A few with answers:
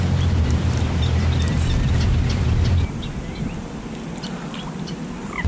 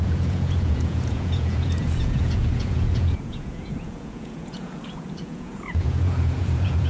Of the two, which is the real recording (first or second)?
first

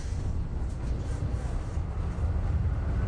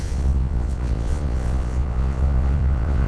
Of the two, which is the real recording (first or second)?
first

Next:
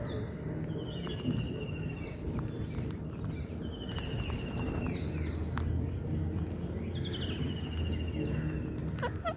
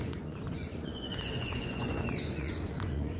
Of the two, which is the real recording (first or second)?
first